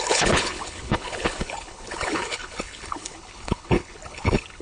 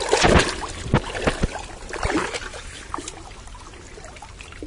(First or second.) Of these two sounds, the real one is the second